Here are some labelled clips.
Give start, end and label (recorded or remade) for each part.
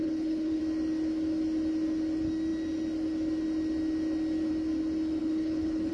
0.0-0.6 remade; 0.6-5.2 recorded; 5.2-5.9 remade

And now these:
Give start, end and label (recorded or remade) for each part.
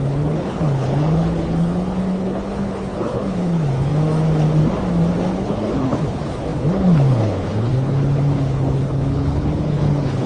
0.0-3.9 remade; 3.9-5.3 recorded; 5.3-10.3 remade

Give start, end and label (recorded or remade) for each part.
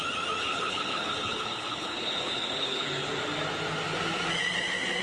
0.0-0.4 recorded; 0.4-3.1 remade; 3.1-5.0 recorded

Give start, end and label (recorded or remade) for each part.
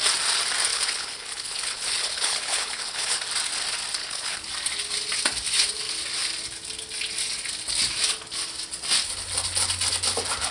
0.0-0.7 recorded; 0.7-3.2 remade; 3.2-4.0 recorded; 4.0-4.5 remade; 4.5-10.5 recorded